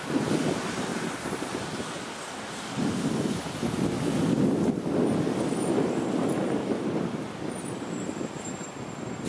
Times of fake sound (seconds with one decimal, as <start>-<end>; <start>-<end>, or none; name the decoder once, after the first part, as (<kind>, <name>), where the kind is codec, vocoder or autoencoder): none